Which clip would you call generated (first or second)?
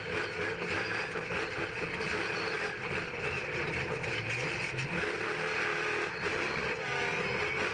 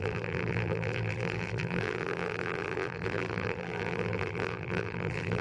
second